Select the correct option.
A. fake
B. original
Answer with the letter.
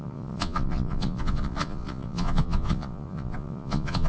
A